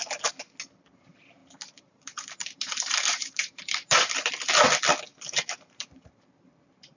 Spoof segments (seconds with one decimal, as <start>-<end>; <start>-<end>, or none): 1.4-4.3; 5.1-6.5

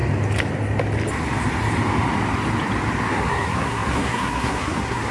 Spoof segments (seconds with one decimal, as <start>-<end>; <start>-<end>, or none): 3.1-5.1